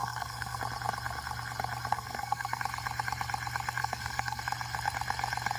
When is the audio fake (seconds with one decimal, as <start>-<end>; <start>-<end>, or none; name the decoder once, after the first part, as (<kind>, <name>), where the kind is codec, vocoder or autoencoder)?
0.0-0.6 (codec, SNAC); 1.9-2.6; 3.8-4.4